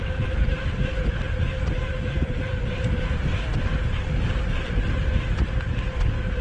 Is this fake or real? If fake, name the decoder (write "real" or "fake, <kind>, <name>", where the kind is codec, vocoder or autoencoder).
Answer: real